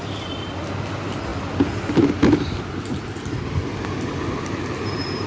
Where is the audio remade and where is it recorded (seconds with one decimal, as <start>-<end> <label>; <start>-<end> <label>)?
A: 0.0-5.3 recorded